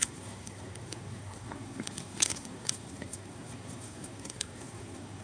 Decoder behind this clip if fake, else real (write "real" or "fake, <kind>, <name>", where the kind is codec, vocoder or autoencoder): fake, codec, SNAC